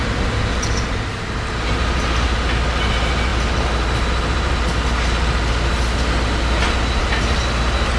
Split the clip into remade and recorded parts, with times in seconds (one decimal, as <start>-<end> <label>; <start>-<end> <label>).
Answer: 0.0-8.0 recorded